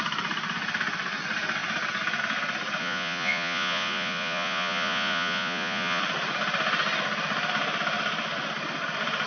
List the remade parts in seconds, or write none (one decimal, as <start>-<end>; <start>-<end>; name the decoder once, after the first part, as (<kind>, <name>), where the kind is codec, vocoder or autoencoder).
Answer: 2.8-6.0 (vocoder, Vocos)